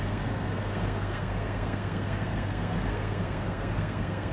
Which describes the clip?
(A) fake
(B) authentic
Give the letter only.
A